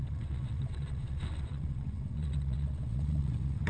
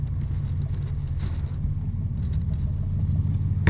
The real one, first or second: second